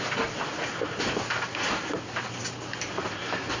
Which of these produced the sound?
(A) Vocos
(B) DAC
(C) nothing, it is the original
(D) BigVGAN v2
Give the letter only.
C